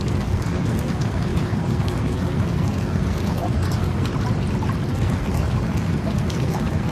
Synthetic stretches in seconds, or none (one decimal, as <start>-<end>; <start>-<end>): 0.0-4.1; 4.9-6.9